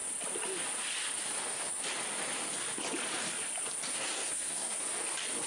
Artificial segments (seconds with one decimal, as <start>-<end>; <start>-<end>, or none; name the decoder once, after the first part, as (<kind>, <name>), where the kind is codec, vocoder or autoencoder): 3.9-4.8 (codec, SNAC)